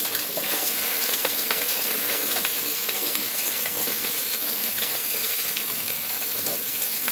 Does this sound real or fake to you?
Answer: fake